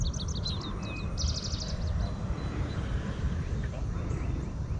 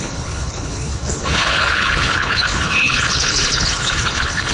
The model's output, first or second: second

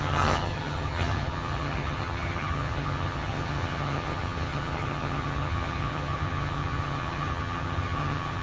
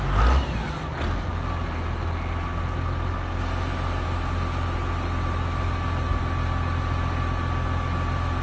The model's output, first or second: first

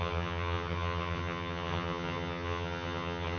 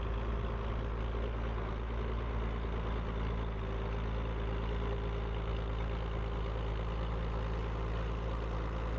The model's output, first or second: first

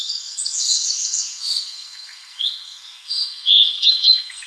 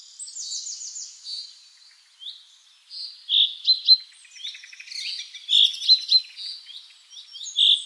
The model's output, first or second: first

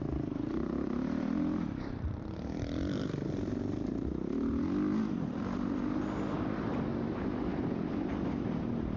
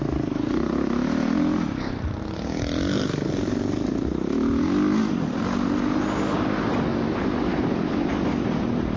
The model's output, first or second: first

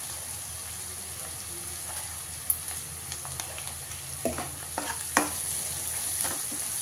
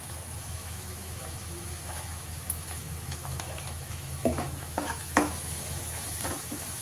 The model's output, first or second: second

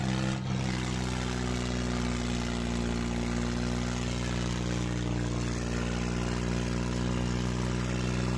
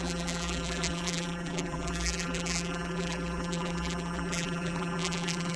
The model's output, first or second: second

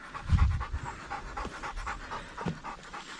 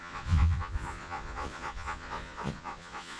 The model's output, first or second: second